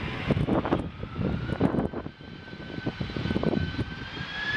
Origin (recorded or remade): recorded